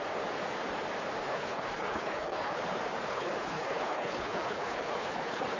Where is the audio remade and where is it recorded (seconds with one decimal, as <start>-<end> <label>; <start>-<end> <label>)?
0.0-1.2 recorded; 1.2-2.6 remade; 2.6-3.1 recorded; 3.1-5.6 remade